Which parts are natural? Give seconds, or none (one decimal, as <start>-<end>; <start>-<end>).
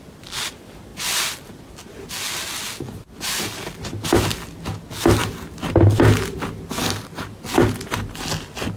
0.0-5.2; 6.4-8.8